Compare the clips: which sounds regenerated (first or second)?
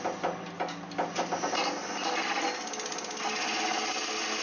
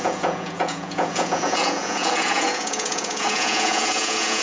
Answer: second